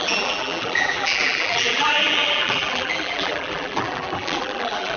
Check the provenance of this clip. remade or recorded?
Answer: remade